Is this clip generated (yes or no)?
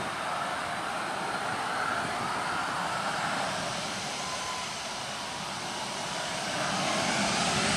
no